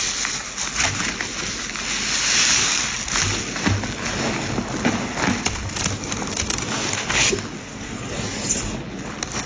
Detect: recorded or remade recorded